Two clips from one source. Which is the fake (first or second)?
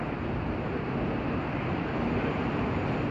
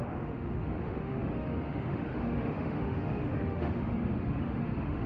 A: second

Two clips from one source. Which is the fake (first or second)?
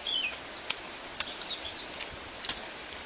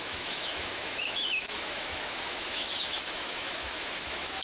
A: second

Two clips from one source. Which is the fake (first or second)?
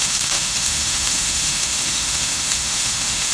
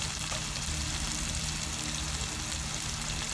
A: first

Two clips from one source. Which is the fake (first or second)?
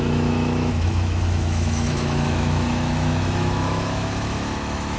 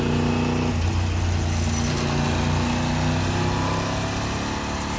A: first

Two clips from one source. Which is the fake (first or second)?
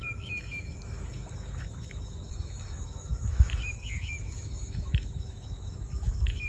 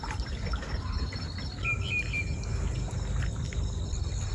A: first